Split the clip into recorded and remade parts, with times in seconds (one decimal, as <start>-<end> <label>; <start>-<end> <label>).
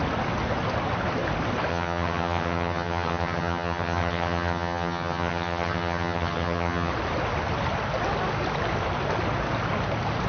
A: 0.0-1.7 recorded; 1.7-6.9 remade; 6.9-10.3 recorded